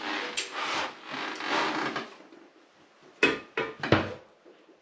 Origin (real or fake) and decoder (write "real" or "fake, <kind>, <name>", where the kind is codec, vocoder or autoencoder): real